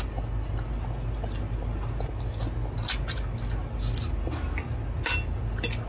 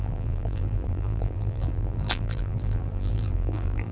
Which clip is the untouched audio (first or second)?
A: first